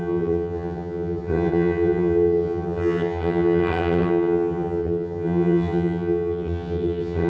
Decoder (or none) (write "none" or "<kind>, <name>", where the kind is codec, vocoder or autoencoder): vocoder, HiFi-GAN